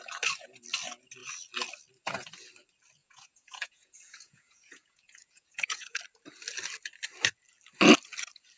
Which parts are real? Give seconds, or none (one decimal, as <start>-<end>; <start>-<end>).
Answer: 0.0-3.0; 6.0-8.6